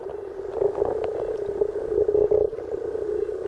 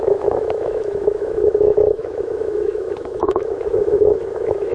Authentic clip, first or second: first